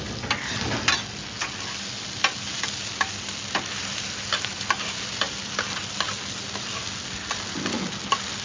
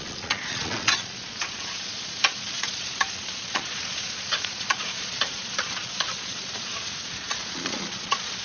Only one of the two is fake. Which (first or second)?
second